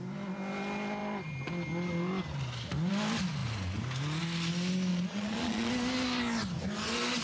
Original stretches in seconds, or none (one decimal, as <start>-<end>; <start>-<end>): 0.0-4.9; 5.7-7.2